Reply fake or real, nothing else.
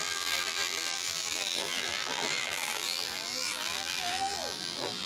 fake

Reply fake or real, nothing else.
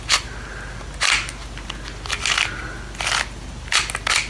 real